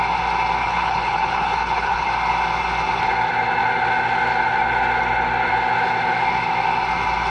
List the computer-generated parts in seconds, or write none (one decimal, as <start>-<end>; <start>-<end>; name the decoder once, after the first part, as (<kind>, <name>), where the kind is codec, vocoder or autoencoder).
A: 0.6-2.1 (codec, HILCodec)